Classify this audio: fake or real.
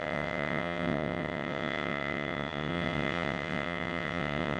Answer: fake